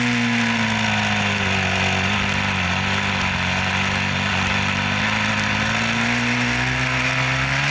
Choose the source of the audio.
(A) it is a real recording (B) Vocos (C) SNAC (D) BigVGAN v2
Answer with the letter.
A